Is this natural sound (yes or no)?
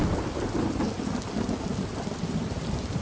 yes